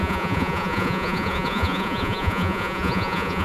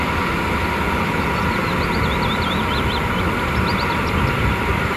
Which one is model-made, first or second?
first